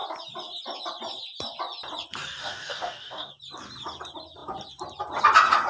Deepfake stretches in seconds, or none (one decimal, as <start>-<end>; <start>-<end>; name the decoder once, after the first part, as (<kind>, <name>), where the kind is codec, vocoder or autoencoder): 2.4-3.3 (codec, DAC)